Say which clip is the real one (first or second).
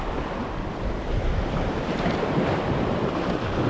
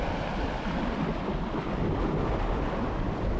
second